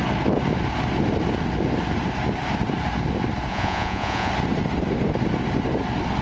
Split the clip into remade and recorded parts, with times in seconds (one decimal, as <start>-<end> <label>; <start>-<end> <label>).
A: 0.0-3.5 recorded; 3.5-4.3 remade; 4.3-6.2 recorded